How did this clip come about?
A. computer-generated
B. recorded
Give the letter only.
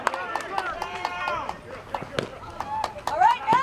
B